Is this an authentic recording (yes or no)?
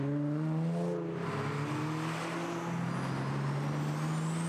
yes